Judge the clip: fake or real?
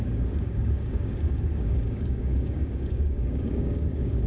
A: fake